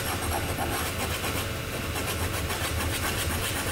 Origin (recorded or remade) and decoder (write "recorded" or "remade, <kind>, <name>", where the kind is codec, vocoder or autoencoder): recorded